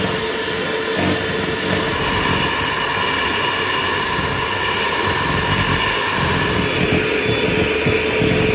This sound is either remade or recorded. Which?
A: recorded